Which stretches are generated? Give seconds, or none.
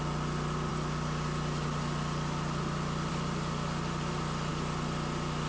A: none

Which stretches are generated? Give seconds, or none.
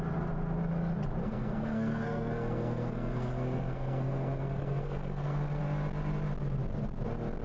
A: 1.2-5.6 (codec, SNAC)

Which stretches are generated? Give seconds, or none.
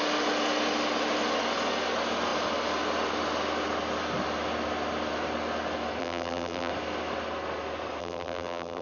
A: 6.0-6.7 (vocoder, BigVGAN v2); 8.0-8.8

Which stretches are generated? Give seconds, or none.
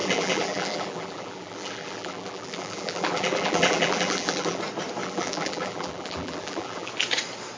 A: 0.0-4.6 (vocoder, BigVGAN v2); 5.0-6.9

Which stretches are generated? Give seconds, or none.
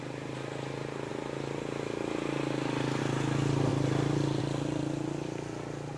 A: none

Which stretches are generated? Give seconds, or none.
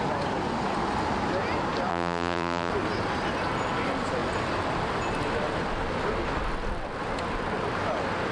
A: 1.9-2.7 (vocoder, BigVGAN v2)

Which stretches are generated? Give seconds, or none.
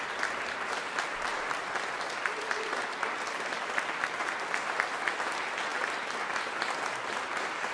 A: none